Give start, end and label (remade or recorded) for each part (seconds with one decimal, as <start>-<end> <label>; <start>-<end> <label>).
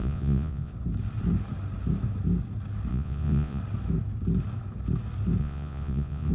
0.0-0.7 remade; 0.7-2.9 recorded; 2.9-3.6 remade; 3.6-5.4 recorded; 5.4-6.3 remade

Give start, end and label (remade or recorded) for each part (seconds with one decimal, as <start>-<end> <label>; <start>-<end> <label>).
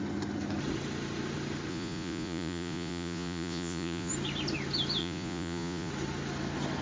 0.0-1.7 recorded; 1.7-4.1 remade; 4.1-5.0 recorded; 5.0-5.9 remade; 5.9-6.8 recorded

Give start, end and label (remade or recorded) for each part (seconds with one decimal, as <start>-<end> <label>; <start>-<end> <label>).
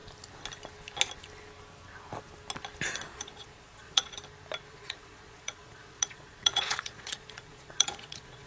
0.0-3.0 recorded; 3.0-4.2 remade; 4.2-4.7 recorded; 4.7-8.5 remade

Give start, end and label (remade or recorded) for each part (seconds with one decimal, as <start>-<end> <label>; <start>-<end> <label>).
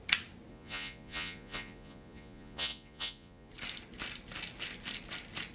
0.0-0.5 recorded; 0.5-3.5 remade; 3.5-5.5 recorded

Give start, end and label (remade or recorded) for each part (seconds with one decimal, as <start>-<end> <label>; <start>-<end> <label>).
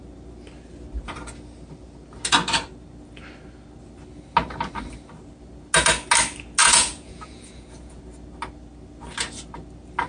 0.0-6.6 recorded; 6.6-8.0 remade; 8.0-10.1 recorded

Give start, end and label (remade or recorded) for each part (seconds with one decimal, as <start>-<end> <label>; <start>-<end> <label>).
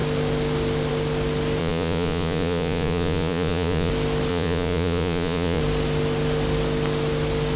0.0-1.6 recorded; 1.6-3.9 remade; 3.9-4.3 recorded; 4.3-5.6 remade; 5.6-7.6 recorded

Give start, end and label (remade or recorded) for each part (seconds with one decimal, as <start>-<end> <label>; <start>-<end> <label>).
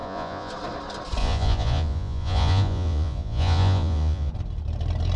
0.0-0.5 remade; 0.5-1.2 recorded; 1.2-4.3 remade; 4.3-5.2 recorded